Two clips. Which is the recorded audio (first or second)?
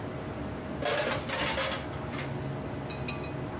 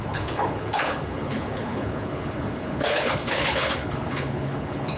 first